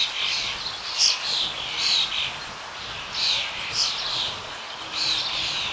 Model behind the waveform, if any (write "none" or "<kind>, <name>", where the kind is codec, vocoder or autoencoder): none